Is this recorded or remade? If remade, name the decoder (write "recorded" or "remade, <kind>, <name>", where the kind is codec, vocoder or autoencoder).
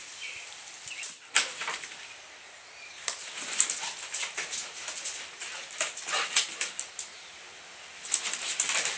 remade, vocoder, BigVGAN v2